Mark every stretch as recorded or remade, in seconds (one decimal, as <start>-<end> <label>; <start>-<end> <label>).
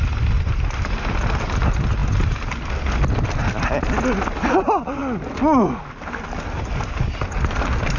0.0-8.0 recorded